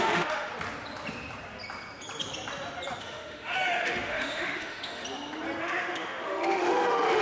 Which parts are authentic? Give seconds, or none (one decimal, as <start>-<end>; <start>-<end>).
0.5-3.0; 5.0-5.6